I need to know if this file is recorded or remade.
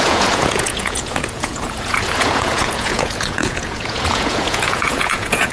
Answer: remade